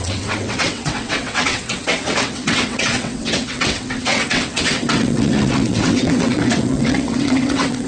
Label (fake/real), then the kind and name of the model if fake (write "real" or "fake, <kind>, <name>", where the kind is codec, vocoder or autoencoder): fake, vocoder, WaveNeXt